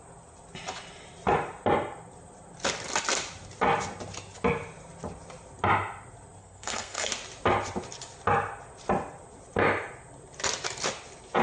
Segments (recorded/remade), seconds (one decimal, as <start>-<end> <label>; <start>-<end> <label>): 0.0-6.4 recorded; 6.4-7.1 remade; 7.1-11.4 recorded